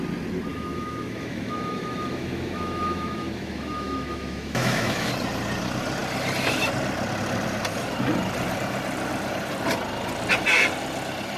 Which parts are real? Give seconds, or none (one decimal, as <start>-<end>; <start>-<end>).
0.0-0.5; 5.1-11.4